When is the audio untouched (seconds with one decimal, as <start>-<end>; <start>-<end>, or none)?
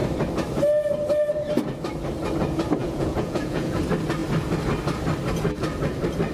0.0-2.8; 3.8-6.3